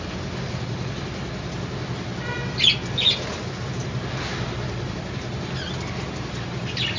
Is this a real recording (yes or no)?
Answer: yes